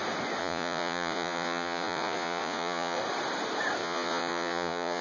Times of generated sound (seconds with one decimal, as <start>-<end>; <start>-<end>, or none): 0.4-3.0; 3.8-5.0